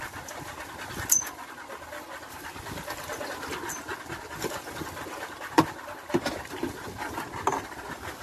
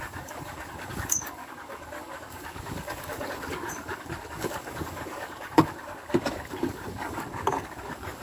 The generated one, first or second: second